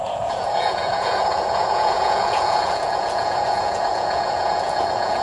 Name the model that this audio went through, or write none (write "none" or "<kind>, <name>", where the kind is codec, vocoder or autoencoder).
vocoder, Vocos